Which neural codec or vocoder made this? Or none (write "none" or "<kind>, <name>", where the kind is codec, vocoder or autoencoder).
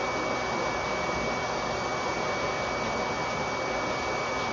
none